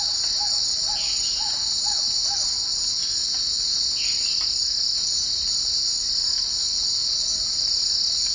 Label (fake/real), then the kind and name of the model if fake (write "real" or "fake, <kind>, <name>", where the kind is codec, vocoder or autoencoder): real